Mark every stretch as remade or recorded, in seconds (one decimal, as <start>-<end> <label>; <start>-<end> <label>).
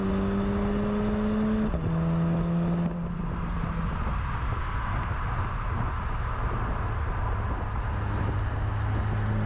0.0-4.6 recorded; 4.6-5.1 remade; 5.1-9.5 recorded